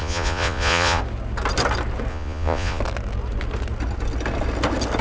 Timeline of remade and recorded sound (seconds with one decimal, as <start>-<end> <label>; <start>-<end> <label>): 0.0-1.0 remade; 1.0-2.1 recorded; 2.1-2.8 remade; 2.8-5.0 recorded